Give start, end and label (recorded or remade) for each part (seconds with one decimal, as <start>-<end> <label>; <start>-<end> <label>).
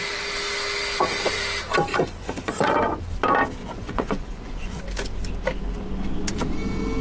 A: 0.0-1.9 recorded; 1.9-3.0 remade; 3.0-3.6 recorded; 3.6-4.8 remade; 4.8-7.0 recorded